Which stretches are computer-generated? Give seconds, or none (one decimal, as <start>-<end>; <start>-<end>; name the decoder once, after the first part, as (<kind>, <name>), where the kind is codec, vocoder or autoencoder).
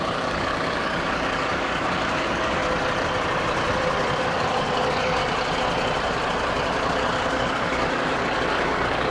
0.0-2.6 (codec, DAC); 4.2-5.2; 7.3-9.1